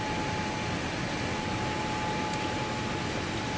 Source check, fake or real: real